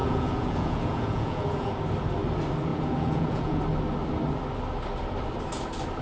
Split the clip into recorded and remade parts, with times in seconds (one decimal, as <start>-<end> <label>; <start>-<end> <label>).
0.0-1.8 remade; 1.8-2.7 recorded; 2.7-3.6 remade; 3.6-6.0 recorded